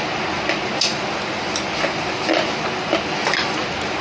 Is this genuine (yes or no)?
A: yes